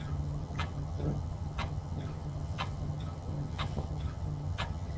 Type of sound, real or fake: fake